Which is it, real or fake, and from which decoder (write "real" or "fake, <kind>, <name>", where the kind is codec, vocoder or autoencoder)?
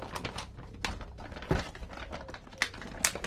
fake, vocoder, BigVGAN v2